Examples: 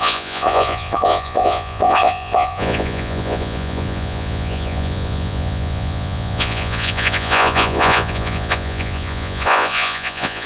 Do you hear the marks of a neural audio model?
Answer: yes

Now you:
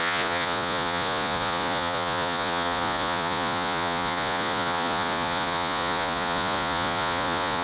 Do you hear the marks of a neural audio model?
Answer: yes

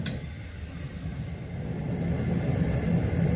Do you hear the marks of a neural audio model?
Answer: no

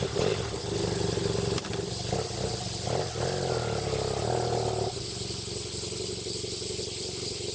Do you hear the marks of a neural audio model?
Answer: no